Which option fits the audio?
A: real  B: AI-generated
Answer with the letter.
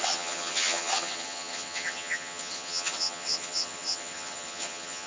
B